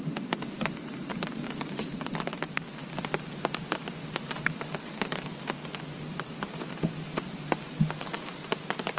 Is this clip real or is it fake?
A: real